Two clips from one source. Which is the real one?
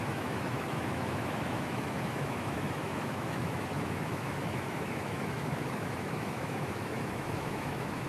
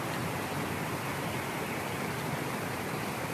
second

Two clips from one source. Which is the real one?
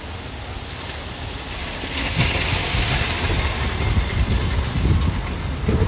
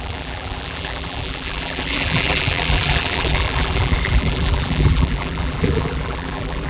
first